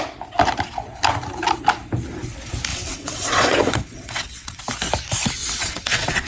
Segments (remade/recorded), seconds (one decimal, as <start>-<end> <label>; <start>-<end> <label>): 0.0-2.7 recorded; 2.7-4.6 remade; 4.6-5.4 recorded; 5.4-6.3 remade